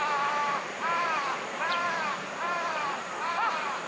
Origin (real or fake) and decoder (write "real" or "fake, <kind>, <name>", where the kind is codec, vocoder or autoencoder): fake, vocoder, BigVGAN v2